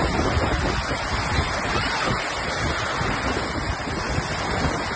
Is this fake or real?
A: real